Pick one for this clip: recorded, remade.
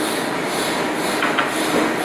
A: recorded